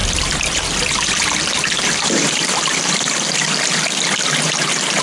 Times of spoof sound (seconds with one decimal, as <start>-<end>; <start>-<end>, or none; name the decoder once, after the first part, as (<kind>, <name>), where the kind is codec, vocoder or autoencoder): none